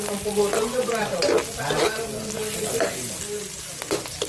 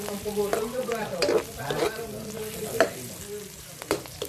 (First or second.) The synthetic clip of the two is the second